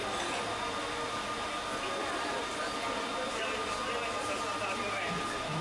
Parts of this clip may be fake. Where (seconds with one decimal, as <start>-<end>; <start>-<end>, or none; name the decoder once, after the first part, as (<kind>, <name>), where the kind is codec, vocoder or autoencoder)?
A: none